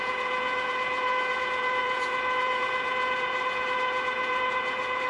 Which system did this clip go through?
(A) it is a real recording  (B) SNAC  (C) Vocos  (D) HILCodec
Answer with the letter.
C